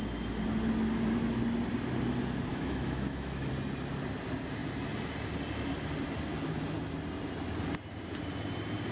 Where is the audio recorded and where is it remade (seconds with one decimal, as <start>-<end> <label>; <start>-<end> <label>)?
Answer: 0.0-2.5 recorded; 2.5-3.5 remade; 3.5-8.9 recorded